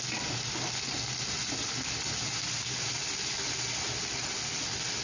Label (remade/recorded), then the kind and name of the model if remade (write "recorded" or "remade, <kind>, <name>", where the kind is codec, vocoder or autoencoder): recorded